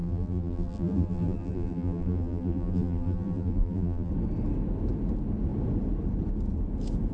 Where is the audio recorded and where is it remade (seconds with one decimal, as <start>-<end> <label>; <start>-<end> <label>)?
0.0-4.1 remade; 4.1-7.1 recorded